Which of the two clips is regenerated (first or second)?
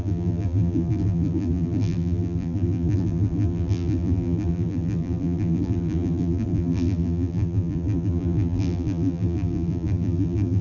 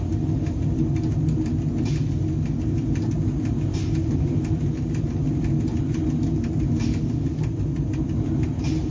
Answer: first